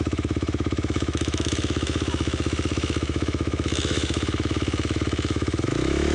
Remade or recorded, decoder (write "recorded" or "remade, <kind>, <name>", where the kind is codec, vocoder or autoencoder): remade, autoencoder, DAC-VAE